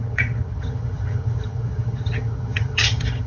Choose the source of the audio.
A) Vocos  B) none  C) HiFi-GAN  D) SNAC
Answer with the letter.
C